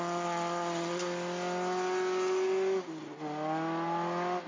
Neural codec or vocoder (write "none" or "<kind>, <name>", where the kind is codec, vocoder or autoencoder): none